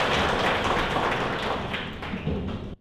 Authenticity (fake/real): real